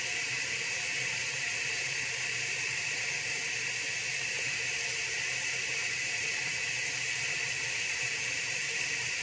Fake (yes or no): yes